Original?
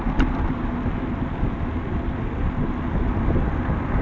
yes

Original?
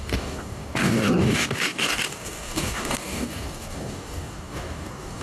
no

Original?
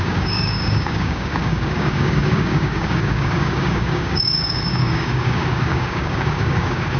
no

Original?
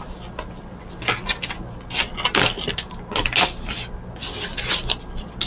yes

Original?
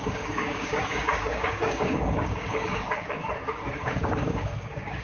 no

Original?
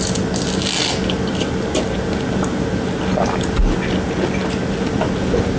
yes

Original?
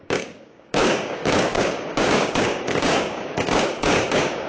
no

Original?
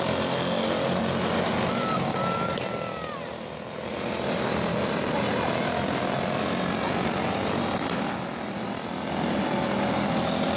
yes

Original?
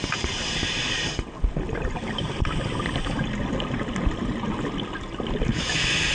yes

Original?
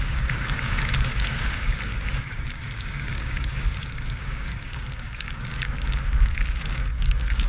no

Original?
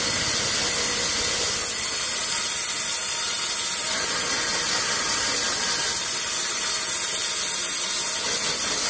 yes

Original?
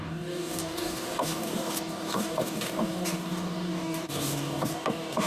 no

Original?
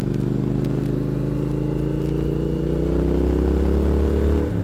yes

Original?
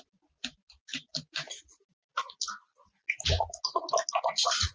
yes